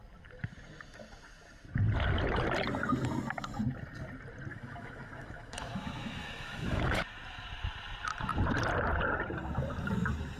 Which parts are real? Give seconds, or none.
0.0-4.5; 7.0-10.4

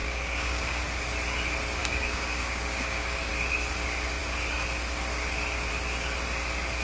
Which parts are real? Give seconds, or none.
0.8-1.8; 3.3-6.8